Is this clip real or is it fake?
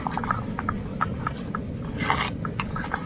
real